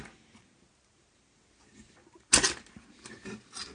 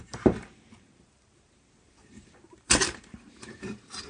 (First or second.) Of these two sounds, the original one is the first